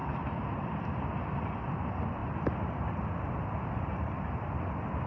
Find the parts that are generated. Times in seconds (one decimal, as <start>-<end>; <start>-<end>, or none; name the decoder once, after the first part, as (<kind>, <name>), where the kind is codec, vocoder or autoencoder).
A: none